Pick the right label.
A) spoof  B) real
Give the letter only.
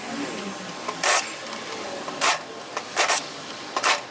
B